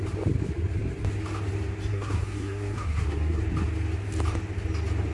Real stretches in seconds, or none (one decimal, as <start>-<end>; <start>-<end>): 0.0-1.9; 3.4-5.1